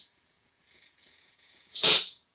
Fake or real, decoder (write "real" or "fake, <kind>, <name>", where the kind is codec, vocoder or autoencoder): fake, vocoder, Vocos